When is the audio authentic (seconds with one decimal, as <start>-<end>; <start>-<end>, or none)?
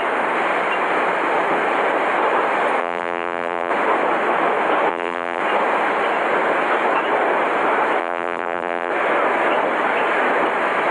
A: 0.0-2.8; 3.7-4.9; 5.4-8.0; 8.9-10.9